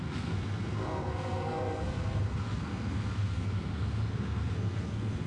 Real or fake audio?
fake